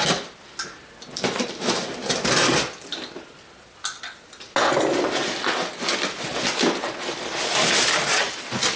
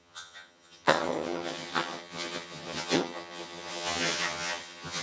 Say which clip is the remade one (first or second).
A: second